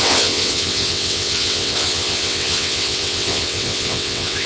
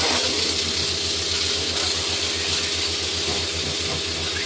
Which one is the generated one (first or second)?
first